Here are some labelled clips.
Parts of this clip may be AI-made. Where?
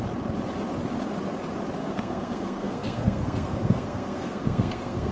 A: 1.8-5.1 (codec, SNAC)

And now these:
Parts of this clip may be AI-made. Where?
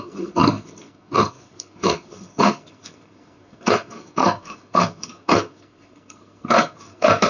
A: 0.0-7.3 (codec, SNAC)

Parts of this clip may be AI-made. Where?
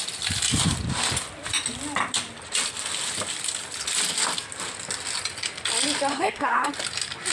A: 6.1-6.7 (codec, SNAC)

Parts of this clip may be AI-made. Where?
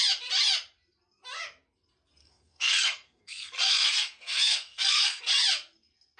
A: 2.2-5.2 (codec, SNAC)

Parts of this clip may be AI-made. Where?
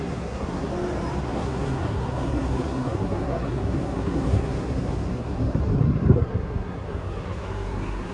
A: 0.0-0.7 (codec, SNAC); 1.2-8.1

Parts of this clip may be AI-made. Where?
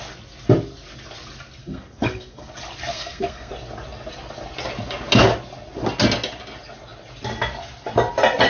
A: 1.6-2.5 (codec, SNAC); 2.9-3.5